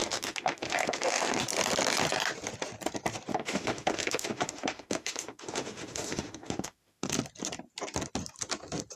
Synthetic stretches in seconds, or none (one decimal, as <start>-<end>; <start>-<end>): 0.0-1.4; 3.3-7.1